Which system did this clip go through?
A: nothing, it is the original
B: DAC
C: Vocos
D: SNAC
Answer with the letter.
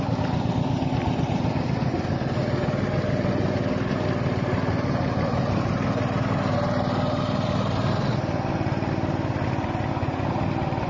A